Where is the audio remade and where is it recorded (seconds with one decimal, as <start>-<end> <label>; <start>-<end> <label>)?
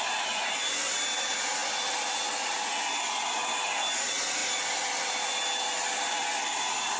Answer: 0.0-7.0 recorded